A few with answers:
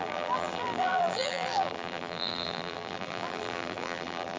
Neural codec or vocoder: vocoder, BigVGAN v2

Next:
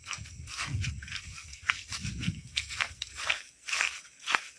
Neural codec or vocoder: codec, SNAC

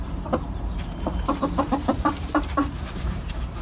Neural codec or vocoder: vocoder, BigVGAN v2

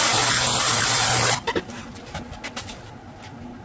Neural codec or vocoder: none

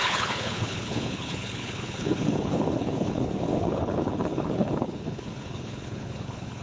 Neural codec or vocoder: codec, HILCodec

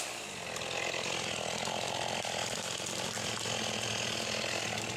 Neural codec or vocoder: vocoder, BigVGAN v2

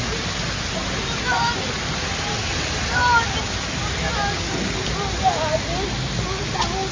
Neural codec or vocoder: none